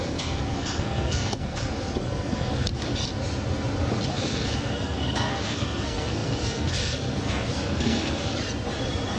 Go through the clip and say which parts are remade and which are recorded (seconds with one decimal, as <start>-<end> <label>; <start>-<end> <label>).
0.0-2.7 remade; 2.7-4.1 recorded; 4.1-8.3 remade; 8.3-9.2 recorded